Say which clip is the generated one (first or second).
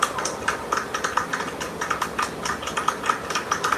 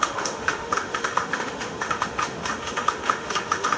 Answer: second